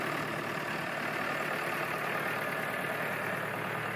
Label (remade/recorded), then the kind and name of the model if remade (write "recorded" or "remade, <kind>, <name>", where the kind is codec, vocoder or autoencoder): recorded